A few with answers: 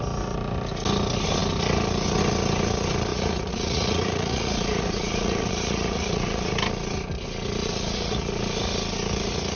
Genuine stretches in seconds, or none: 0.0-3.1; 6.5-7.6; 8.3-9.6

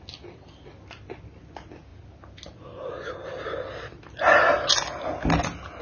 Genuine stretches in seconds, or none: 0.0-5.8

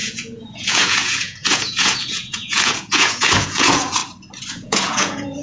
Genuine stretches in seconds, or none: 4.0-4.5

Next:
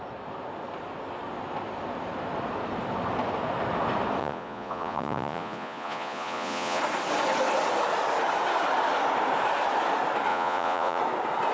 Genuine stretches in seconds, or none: 0.0-4.2; 6.8-10.3; 11.0-11.5

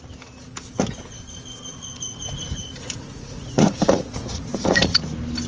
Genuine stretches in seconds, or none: 0.0-1.7; 5.0-5.5

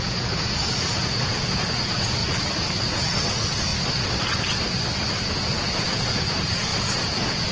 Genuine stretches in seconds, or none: 2.2-2.8; 3.7-5.2

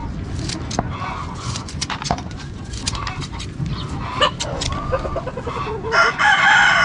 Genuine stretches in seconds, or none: 0.0-0.8; 3.0-6.1

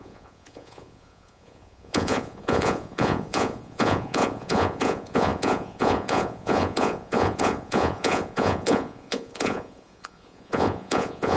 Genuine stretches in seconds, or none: none